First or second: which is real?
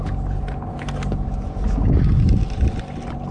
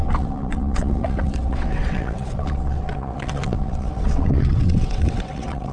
first